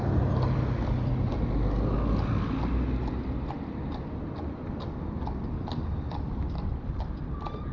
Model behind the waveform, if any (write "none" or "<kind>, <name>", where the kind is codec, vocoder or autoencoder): none